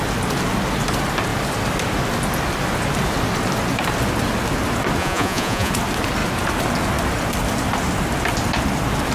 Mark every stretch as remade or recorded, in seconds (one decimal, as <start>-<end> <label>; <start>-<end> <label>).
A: 0.0-5.0 recorded; 5.0-5.7 remade; 5.7-9.1 recorded